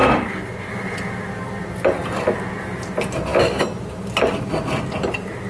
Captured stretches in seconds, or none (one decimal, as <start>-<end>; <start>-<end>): 0.0-5.5